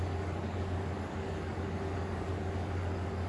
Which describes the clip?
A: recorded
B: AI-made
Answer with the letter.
B